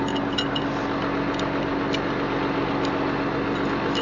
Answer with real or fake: real